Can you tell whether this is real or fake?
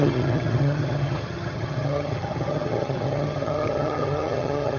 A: fake